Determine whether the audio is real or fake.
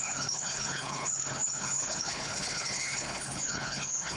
fake